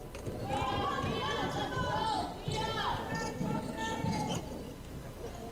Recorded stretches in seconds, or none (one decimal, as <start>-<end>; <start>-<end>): 0.0-5.5